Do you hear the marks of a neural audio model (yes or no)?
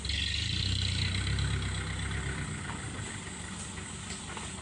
no